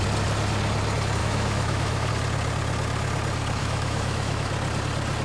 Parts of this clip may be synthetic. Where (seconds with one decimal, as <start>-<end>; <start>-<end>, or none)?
1.2-2.1; 3.6-4.5